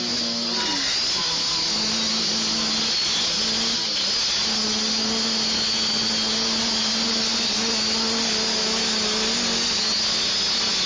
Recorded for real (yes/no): yes